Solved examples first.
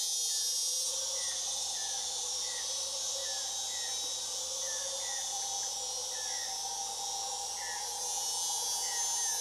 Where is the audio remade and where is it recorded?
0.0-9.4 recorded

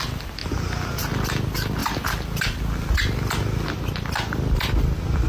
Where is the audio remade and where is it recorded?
0.0-5.3 recorded

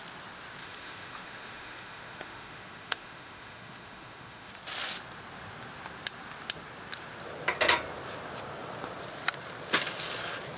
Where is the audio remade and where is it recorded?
0.0-0.6 recorded; 0.6-4.5 remade; 4.5-10.6 recorded

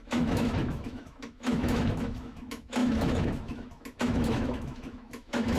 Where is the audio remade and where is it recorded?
0.0-5.6 remade

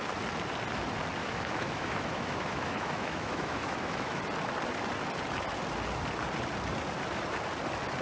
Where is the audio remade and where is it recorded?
0.0-1.2 recorded; 1.2-4.2 remade; 4.2-8.0 recorded